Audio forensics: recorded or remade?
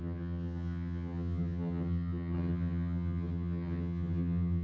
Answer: remade